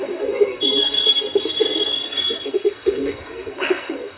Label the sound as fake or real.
fake